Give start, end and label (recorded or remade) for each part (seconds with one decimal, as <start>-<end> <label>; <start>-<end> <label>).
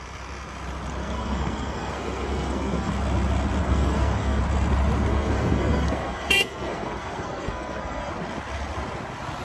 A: 0.0-1.0 recorded; 1.0-2.9 remade; 2.9-3.6 recorded; 3.6-4.4 remade; 4.4-5.1 recorded; 5.1-8.1 remade; 8.1-9.4 recorded